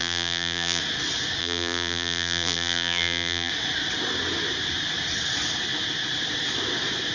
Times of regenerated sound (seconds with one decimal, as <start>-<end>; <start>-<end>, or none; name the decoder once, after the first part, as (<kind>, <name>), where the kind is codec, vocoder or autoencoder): 0.0-0.8 (vocoder, BigVGAN v2); 1.4-3.5